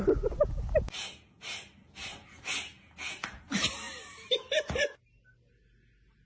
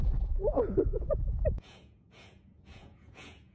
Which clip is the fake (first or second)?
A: second